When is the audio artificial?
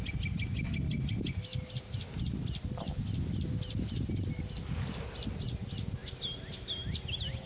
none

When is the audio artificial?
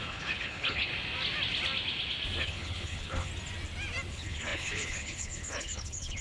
0.0-0.9 (codec, HILCodec); 2.4-3.3; 4.1-6.2